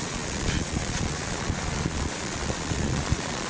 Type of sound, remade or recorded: remade